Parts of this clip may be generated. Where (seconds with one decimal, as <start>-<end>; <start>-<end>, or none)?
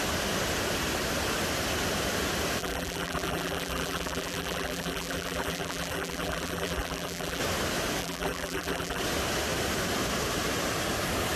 2.6-7.4; 8.0-9.0